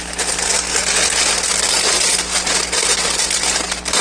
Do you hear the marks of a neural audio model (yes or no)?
no